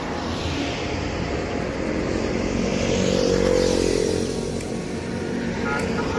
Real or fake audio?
fake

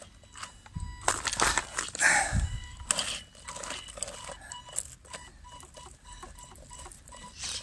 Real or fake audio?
real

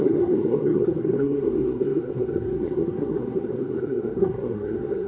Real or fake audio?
fake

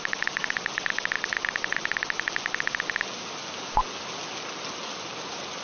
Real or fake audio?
real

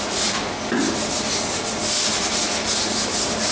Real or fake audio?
real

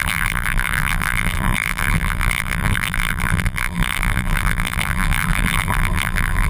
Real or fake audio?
fake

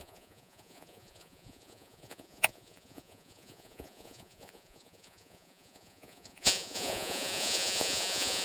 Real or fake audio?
fake